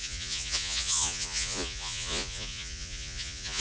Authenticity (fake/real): fake